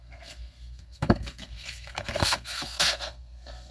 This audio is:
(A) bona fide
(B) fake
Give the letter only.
B